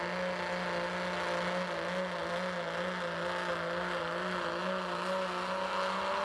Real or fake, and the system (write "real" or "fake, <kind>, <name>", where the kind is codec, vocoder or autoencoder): real